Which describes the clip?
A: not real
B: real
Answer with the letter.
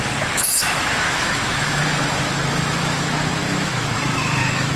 A